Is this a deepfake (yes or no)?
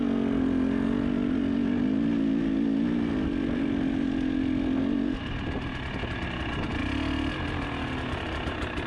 no